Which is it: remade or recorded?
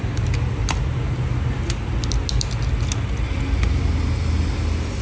recorded